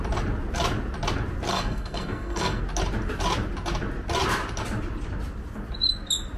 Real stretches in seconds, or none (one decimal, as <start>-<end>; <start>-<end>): 0.0-1.5; 2.6-6.4